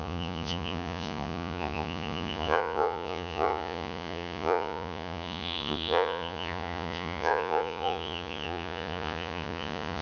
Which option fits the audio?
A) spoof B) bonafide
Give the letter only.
A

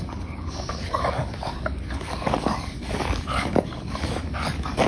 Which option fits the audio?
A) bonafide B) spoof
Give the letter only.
B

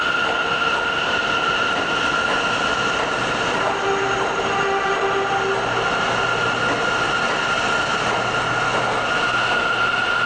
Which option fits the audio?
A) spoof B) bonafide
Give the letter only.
B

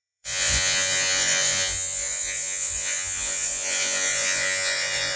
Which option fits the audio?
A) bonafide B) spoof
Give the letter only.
B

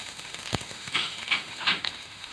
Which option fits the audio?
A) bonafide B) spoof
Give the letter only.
B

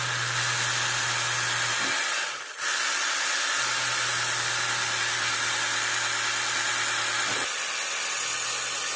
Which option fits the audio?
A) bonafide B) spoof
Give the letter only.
A